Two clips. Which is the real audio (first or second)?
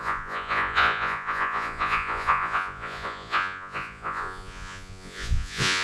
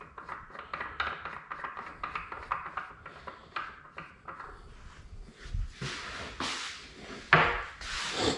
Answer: second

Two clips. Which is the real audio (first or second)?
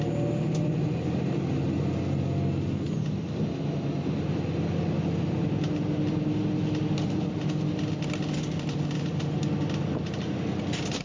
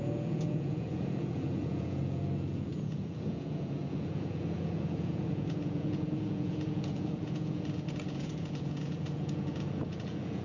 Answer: first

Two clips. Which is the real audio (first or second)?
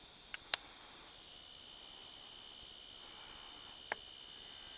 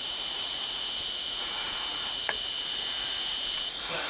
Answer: first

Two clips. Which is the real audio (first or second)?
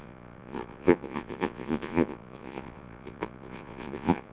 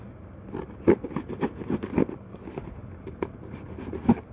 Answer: second